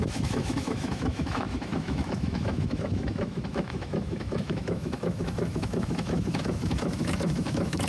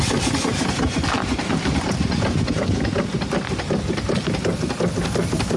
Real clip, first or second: second